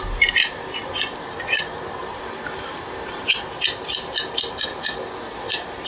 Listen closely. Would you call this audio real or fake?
real